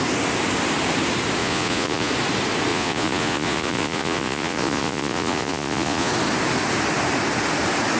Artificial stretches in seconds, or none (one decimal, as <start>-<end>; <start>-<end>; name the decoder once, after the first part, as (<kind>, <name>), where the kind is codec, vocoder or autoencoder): 1.4-2.1 (vocoder, Vocos); 2.7-6.1